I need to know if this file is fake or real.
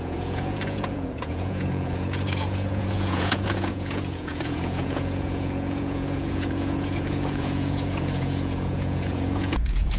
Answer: fake